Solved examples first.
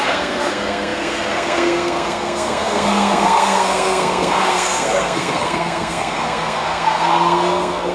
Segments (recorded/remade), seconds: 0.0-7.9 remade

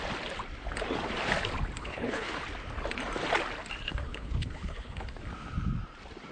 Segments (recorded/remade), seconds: 0.0-1.8 recorded; 1.8-2.4 remade; 2.4-4.0 recorded; 4.0-5.1 remade; 5.1-6.3 recorded

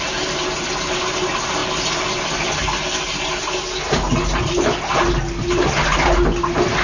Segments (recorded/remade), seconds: 0.0-6.8 recorded

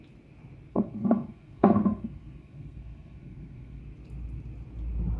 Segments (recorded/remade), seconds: 0.0-0.7 recorded; 0.7-3.8 remade; 3.8-5.2 recorded

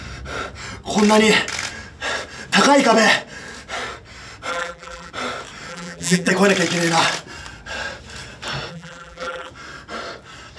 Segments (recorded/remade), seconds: 0.0-4.5 recorded; 4.5-5.1 remade; 5.1-5.7 recorded; 5.7-6.3 remade; 6.3-8.7 recorded; 8.7-9.5 remade; 9.5-10.6 recorded

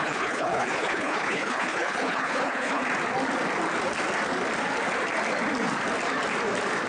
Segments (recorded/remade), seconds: 0.0-2.8 remade; 2.8-6.9 recorded

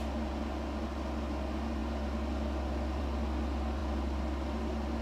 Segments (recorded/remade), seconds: 0.0-5.0 recorded